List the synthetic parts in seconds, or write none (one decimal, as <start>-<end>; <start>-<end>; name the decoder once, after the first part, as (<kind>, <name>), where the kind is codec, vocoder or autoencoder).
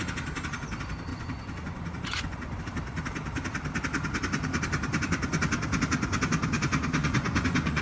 1.1-2.6 (vocoder, Vocos); 7.0-7.8